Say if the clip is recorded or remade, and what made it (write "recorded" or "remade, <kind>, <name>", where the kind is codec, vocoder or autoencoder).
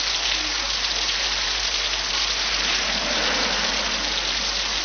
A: recorded